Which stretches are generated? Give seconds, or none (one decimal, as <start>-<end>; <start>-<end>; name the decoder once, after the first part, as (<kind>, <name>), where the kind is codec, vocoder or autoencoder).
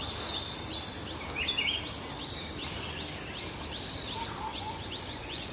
4.5-5.5 (vocoder, Vocos)